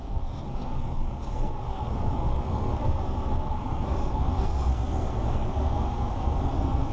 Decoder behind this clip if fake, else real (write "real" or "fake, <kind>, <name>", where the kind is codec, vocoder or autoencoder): fake, codec, SNAC